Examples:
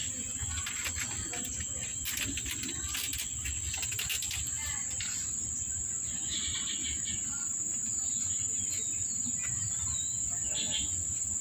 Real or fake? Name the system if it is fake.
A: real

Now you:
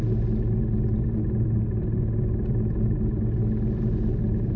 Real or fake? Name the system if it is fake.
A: real